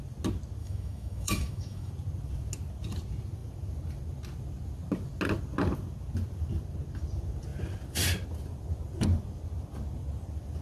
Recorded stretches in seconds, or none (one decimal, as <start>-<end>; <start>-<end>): 0.0-0.6; 1.9-10.6